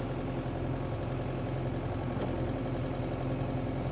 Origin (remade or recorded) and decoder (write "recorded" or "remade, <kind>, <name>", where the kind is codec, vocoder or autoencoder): recorded